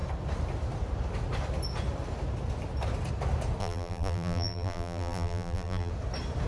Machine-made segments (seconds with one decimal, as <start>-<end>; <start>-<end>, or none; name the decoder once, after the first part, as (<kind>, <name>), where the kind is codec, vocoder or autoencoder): 3.6-5.9 (vocoder, BigVGAN v2)